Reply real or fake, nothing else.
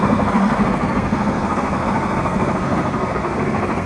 fake